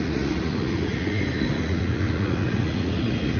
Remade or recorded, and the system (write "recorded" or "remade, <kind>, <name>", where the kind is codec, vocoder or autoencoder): remade, vocoder, Vocos